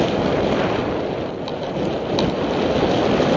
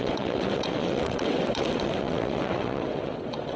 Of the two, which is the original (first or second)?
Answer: first